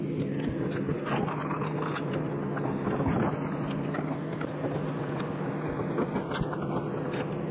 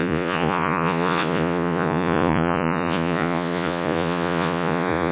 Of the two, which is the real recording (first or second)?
first